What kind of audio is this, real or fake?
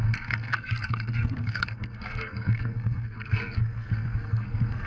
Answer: fake